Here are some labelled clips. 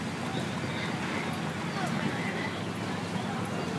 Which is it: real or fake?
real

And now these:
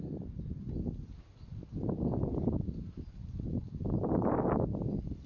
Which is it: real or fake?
real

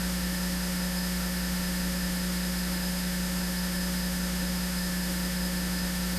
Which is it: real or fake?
fake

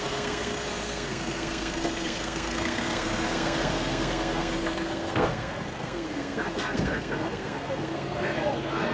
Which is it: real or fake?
fake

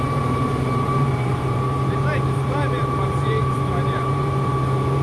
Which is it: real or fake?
fake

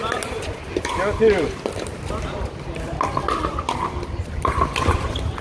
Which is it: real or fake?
real